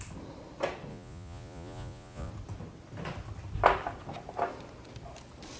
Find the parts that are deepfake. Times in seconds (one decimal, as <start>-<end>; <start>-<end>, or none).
0.9-2.3